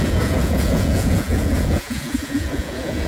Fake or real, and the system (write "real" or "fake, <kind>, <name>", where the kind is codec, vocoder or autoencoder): fake, vocoder, Vocos